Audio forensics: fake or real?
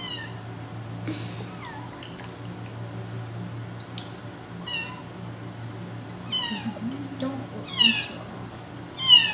real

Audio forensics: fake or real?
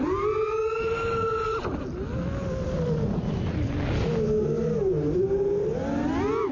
real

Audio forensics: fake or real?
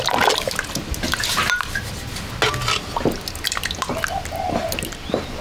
real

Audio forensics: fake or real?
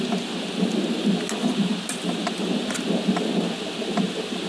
real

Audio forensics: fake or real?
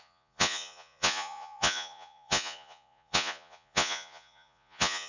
fake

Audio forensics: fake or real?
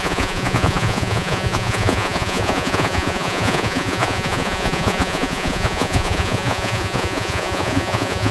fake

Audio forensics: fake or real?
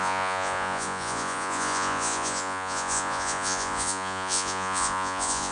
fake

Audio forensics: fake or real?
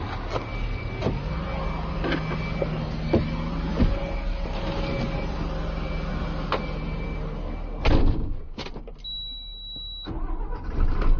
real